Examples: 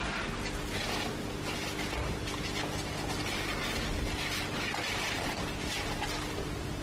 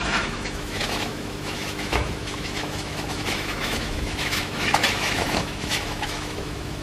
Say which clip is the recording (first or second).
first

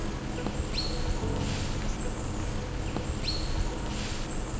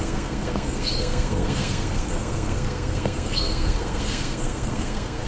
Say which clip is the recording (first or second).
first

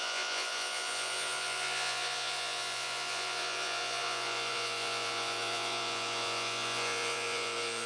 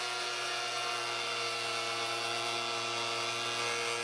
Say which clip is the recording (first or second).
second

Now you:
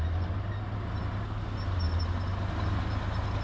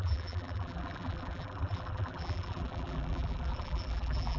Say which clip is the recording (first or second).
first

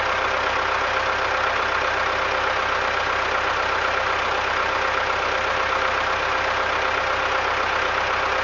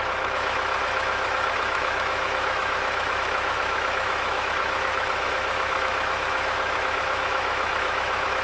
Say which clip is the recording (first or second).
first